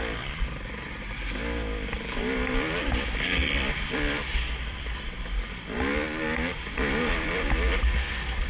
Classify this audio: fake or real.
real